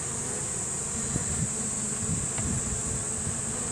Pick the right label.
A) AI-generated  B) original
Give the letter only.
B